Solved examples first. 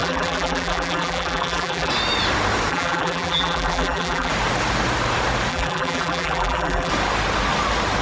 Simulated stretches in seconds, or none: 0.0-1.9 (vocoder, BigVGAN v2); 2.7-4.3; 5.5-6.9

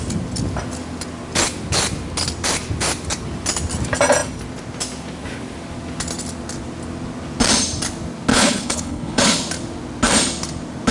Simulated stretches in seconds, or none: 8.3-9.2 (codec, HILCodec)

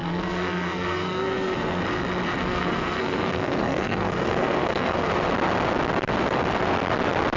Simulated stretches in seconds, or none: 0.0-1.8 (codec, SNAC); 2.4-5.1